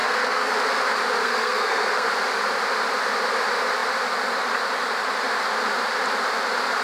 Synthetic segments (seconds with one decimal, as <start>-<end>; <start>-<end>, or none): 0.0-0.5; 1.2-2.1